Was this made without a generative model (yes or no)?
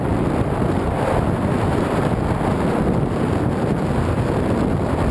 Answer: no